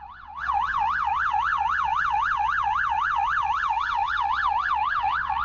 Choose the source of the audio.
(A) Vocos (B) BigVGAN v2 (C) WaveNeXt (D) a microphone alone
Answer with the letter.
C